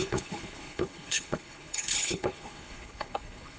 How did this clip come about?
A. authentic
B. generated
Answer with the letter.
B